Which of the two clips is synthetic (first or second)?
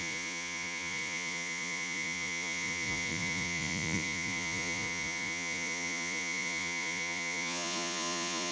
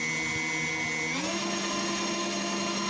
first